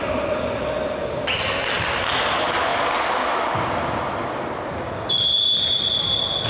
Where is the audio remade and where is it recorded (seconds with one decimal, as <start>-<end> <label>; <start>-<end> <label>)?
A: 0.0-6.5 recorded